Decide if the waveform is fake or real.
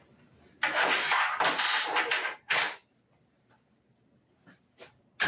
fake